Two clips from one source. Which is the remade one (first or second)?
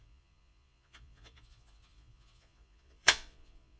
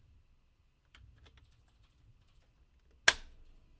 first